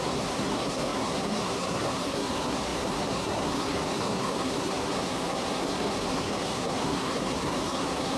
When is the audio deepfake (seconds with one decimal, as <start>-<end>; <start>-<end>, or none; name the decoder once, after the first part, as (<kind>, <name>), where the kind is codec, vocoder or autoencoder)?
0.0-8.2 (codec, SNAC)